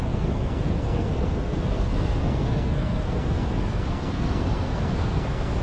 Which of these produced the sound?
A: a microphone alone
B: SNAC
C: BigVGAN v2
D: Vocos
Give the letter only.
B